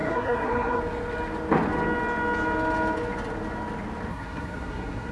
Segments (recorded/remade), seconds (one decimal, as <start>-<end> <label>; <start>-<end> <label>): 0.0-0.8 remade; 0.8-4.1 recorded; 4.1-5.1 remade